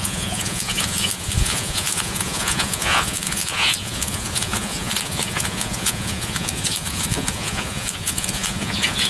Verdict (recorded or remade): remade